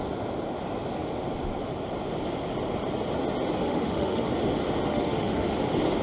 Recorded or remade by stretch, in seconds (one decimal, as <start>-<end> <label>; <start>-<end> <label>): 0.0-3.6 recorded; 3.6-4.3 remade; 4.3-4.9 recorded; 4.9-5.6 remade; 5.6-6.0 recorded